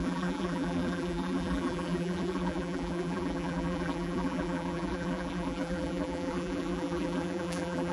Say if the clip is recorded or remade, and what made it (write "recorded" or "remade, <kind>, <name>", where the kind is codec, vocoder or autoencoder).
remade, vocoder, BigVGAN v2